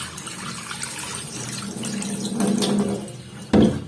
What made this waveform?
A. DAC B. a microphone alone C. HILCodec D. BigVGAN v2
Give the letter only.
B